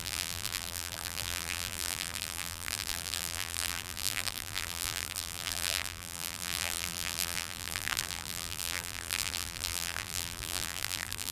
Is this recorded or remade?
remade